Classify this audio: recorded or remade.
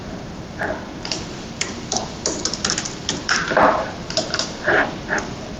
remade